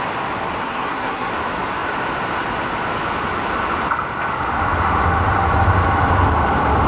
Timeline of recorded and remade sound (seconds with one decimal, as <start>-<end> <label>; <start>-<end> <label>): 0.0-0.6 recorded; 0.6-1.3 remade; 1.3-6.9 recorded